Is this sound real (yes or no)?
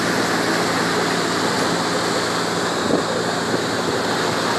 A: yes